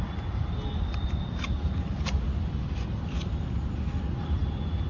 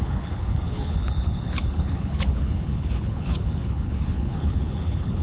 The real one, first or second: first